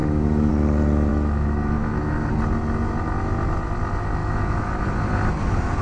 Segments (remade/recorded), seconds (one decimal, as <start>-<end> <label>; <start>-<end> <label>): 0.0-0.5 remade; 0.5-1.1 recorded; 1.1-2.3 remade; 2.3-4.2 recorded; 4.2-4.8 remade; 4.8-5.8 recorded